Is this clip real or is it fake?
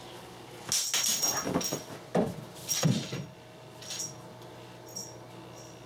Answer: real